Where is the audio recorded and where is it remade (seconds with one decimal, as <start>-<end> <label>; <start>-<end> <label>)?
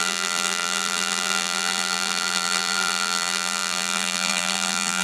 0.0-5.0 remade